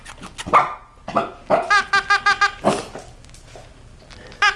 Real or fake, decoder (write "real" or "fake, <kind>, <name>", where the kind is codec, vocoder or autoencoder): real